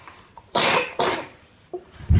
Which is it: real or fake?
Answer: fake